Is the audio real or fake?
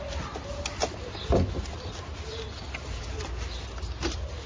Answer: real